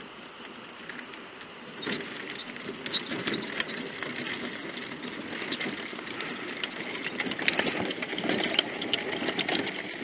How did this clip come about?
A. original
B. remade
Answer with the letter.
A